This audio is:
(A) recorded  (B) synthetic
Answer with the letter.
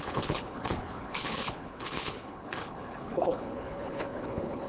B